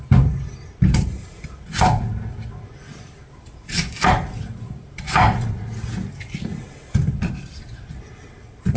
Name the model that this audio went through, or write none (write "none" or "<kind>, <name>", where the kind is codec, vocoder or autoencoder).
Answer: none